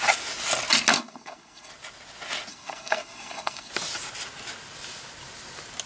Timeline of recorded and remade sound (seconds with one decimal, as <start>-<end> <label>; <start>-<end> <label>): 0.0-0.9 recorded; 0.9-1.7 remade; 1.7-2.5 recorded; 2.5-3.7 remade; 3.7-5.9 recorded